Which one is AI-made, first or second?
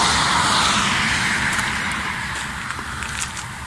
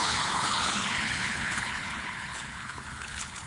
second